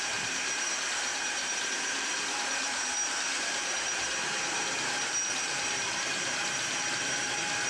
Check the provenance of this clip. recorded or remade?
remade